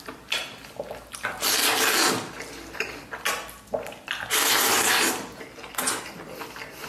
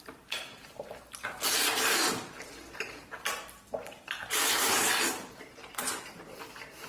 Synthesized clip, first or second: second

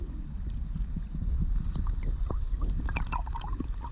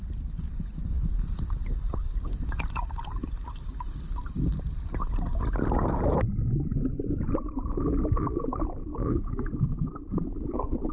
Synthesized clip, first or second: second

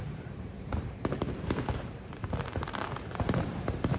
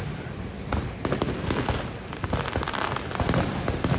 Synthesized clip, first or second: first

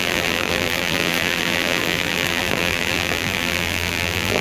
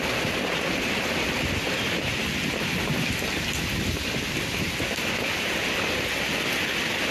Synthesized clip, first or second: first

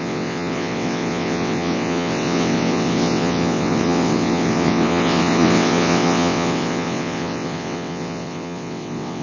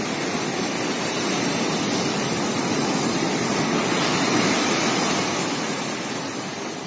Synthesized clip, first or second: first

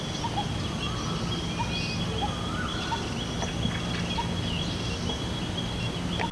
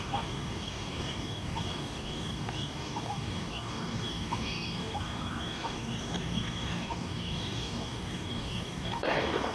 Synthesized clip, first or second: second